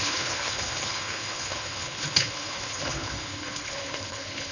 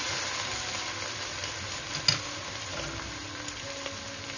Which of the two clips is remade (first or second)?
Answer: first